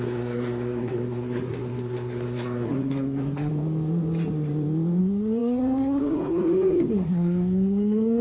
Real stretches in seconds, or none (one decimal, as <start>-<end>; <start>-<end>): 3.5-5.0